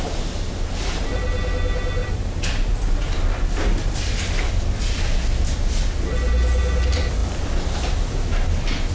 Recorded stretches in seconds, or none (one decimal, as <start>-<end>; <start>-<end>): 0.0-2.0; 4.5-8.9